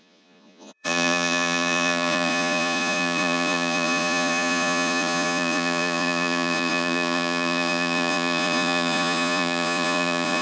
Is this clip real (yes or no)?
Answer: no